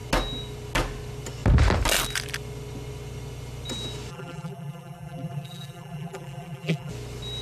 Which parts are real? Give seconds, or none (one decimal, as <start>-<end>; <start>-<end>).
0.0-4.1; 6.9-7.4